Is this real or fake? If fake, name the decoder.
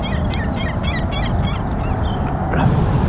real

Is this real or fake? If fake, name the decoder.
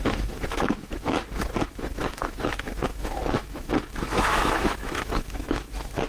fake, autoencoder, DAC-VAE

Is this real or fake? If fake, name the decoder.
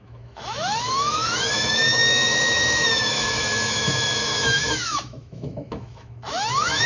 fake, autoencoder, DAC-VAE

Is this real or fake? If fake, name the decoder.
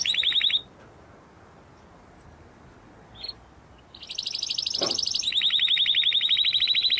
real